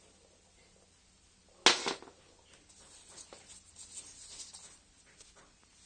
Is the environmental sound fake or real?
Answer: real